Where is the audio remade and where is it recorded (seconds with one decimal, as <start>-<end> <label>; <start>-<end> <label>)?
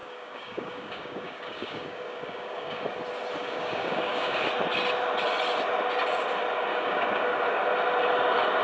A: 0.0-2.8 remade; 2.8-3.4 recorded; 3.4-4.4 remade; 4.4-6.7 recorded; 6.7-7.2 remade; 7.2-8.6 recorded